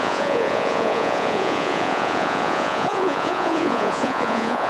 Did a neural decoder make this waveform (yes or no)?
yes